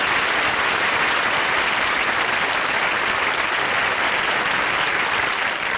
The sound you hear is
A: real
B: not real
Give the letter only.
A